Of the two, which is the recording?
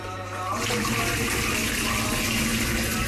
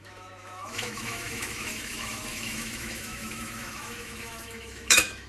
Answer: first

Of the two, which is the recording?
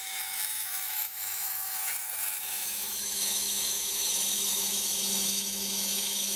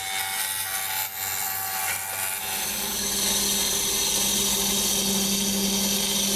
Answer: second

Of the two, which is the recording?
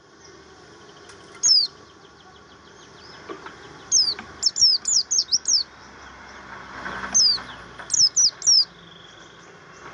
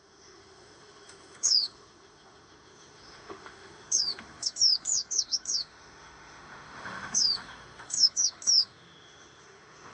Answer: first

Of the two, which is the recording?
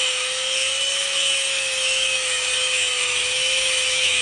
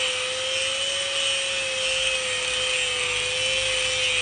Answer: second